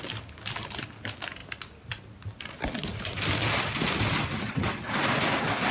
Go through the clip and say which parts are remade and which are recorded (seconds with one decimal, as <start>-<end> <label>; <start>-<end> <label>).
0.0-1.4 recorded; 1.4-4.8 remade; 4.8-5.7 recorded